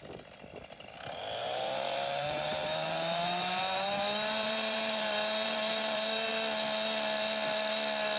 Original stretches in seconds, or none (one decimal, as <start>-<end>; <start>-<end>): 0.0-1.4; 6.3-8.2

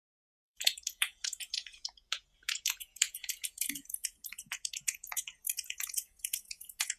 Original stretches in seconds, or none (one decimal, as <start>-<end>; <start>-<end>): none